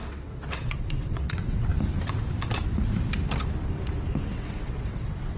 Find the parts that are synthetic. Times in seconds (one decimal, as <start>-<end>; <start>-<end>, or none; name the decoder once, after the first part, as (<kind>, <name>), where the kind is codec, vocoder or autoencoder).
0.0-1.7 (vocoder, WaveNeXt); 4.2-5.4